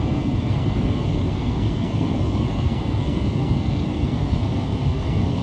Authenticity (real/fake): fake